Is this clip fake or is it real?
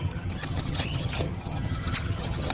fake